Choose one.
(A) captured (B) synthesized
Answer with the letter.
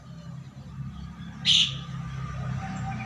A